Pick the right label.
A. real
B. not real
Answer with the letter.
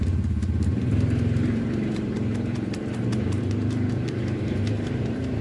B